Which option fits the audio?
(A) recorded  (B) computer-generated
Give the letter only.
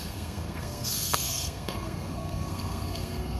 B